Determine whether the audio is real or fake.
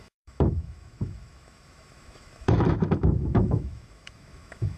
fake